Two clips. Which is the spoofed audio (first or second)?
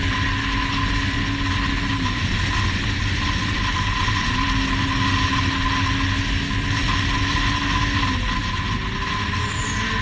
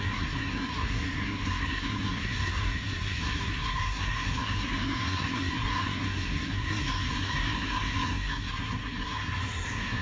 second